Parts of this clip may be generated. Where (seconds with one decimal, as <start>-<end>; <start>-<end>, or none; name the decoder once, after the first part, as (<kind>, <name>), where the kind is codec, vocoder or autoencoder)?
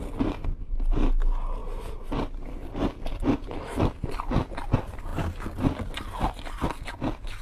none